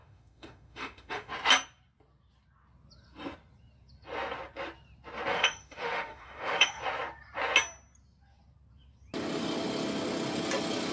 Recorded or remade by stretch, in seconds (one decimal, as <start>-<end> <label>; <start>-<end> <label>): 0.0-1.3 remade; 1.3-5.3 recorded; 5.3-6.8 remade; 6.8-10.9 recorded